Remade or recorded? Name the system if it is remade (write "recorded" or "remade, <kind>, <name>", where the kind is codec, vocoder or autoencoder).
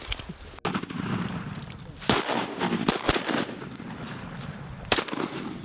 recorded